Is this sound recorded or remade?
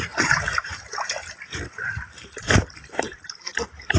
remade